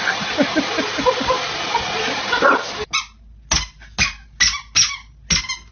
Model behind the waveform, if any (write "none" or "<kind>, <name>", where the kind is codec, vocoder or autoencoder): none